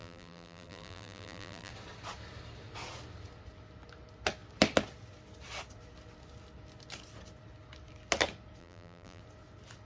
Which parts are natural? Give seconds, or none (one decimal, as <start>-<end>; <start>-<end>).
1.7-8.6; 9.2-9.9